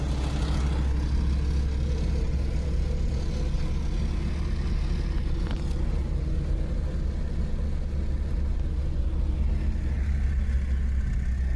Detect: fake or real real